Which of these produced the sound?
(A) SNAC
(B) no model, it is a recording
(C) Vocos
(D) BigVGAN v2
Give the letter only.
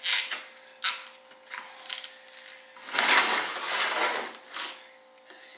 B